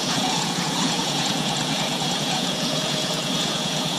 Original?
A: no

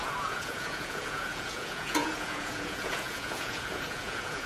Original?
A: no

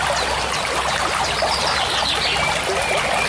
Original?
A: yes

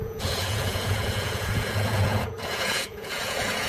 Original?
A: no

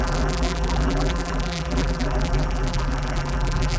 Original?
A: no